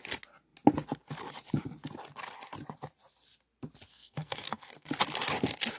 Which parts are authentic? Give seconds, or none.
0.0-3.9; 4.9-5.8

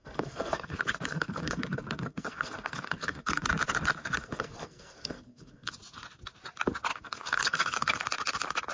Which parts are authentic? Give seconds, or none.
3.5-4.0; 5.7-6.9; 8.0-8.7

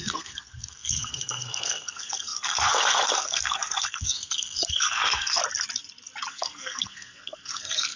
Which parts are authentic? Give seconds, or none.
5.4-6.3

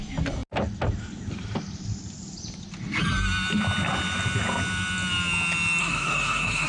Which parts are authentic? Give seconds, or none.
0.0-5.8